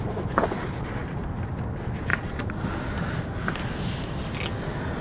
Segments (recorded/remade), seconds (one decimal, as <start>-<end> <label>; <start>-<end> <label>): 0.0-5.0 recorded